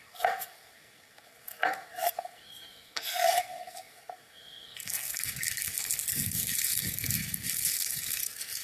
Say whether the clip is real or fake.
fake